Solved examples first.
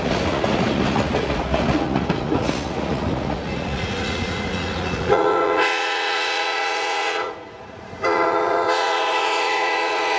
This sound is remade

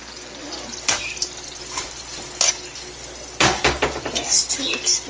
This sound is recorded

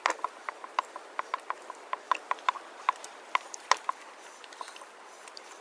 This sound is recorded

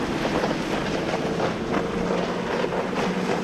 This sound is recorded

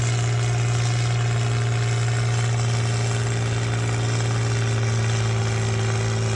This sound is recorded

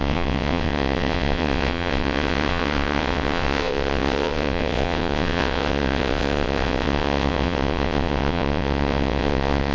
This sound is remade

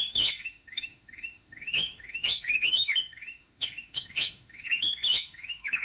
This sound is remade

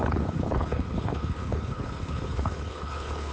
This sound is remade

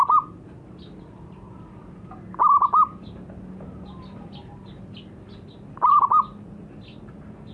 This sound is recorded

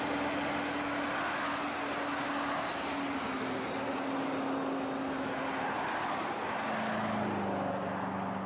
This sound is recorded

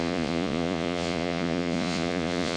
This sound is remade